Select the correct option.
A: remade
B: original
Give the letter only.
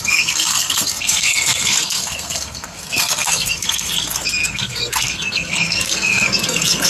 A